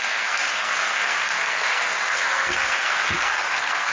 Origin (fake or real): fake